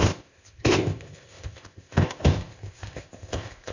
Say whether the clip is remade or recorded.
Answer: remade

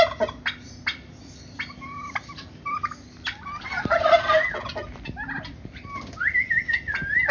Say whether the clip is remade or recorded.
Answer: recorded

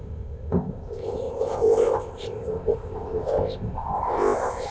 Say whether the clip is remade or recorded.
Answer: remade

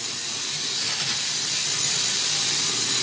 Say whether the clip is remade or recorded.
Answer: recorded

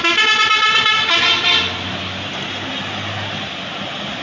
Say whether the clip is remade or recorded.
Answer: recorded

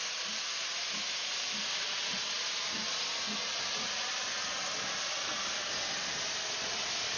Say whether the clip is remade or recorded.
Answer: recorded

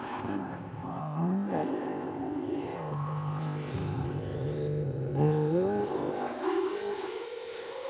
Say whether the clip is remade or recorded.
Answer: remade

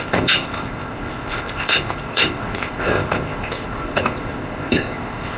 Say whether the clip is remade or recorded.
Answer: remade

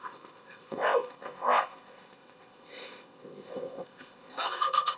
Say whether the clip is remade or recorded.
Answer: remade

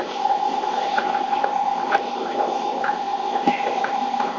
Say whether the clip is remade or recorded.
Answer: remade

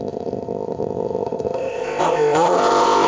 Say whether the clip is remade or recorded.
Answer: remade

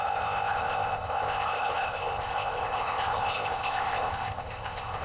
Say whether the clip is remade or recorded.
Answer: remade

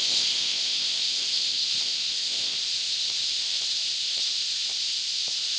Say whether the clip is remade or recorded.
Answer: remade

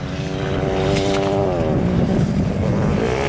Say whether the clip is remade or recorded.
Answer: recorded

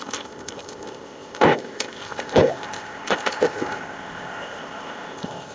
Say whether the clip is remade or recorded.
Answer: remade